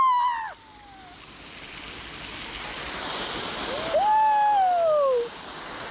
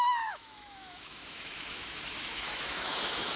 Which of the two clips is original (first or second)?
first